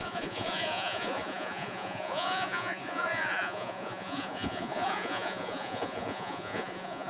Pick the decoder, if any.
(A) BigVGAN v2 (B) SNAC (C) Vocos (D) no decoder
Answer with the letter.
C